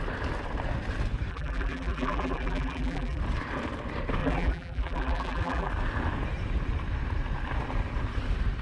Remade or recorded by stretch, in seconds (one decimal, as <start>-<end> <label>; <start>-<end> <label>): 0.0-1.3 recorded; 1.3-3.2 remade; 3.2-4.2 recorded; 4.2-5.7 remade; 5.7-8.6 recorded